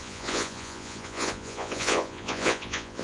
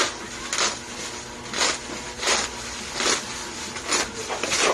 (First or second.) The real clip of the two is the second